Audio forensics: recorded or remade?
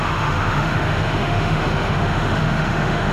remade